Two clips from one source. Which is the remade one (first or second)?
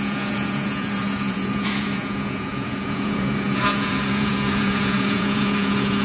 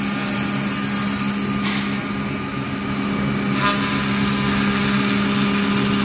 first